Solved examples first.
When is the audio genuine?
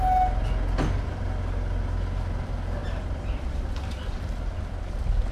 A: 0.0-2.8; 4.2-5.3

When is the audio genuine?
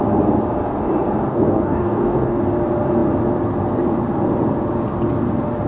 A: 0.0-1.3; 2.4-5.7